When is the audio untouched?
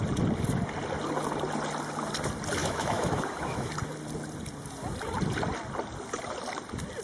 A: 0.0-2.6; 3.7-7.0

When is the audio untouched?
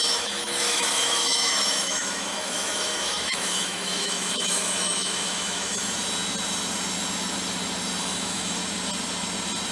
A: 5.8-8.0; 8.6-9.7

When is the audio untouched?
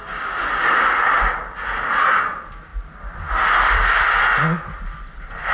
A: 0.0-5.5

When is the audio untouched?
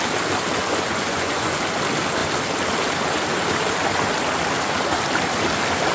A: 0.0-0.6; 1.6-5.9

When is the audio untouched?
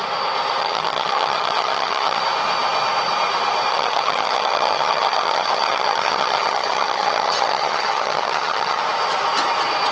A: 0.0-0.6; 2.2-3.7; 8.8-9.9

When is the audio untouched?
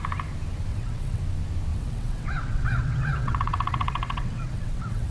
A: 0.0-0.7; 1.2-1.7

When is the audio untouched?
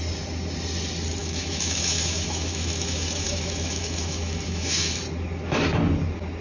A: 0.0-1.2; 5.0-6.4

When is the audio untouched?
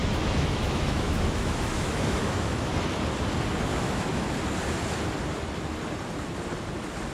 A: 2.7-3.7; 4.3-7.1